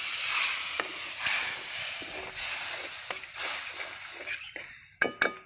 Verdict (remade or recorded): recorded